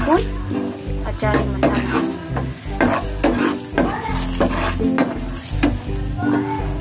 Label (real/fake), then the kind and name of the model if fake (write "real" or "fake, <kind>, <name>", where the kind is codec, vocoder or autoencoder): real